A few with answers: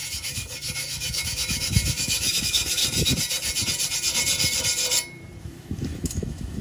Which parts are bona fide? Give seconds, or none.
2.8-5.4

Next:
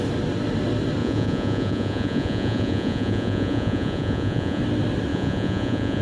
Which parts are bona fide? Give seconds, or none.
0.0-1.0; 4.6-5.1

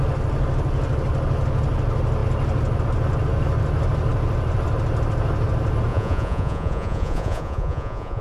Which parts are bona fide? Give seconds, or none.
0.0-5.9

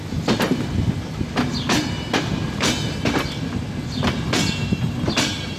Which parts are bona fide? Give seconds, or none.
0.0-5.6

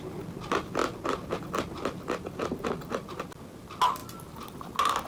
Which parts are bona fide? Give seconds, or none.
0.0-5.1